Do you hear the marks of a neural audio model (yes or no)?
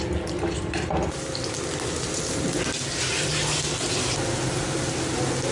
no